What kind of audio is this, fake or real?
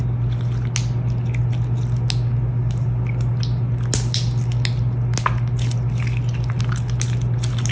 real